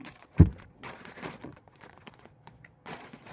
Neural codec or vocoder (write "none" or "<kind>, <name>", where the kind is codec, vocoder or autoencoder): vocoder, Vocos